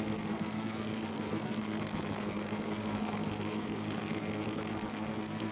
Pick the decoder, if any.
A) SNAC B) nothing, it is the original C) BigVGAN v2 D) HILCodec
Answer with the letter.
A